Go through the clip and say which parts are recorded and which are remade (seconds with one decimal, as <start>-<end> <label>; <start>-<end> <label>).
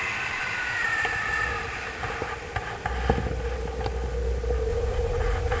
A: 0.0-4.7 recorded; 4.7-5.6 remade